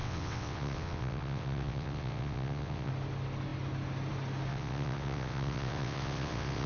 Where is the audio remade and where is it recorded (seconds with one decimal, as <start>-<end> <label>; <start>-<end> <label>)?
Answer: 0.0-2.9 remade; 2.9-4.5 recorded; 4.5-6.7 remade